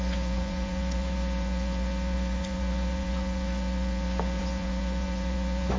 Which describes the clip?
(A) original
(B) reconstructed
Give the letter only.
B